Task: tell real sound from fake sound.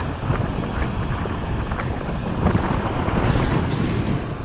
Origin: real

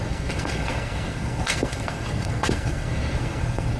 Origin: fake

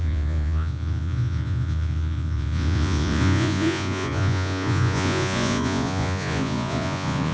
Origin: fake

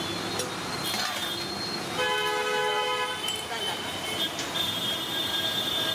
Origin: real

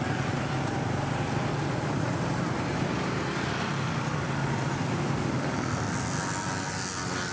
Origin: real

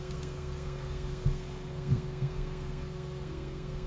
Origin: fake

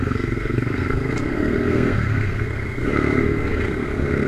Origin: fake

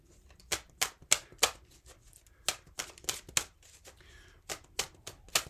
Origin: real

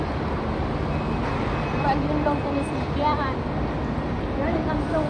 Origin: real